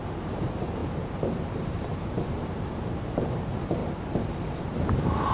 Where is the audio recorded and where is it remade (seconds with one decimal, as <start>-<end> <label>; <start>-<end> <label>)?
0.0-3.8 remade; 3.8-4.5 recorded; 4.5-5.3 remade